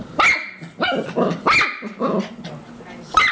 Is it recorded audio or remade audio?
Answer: recorded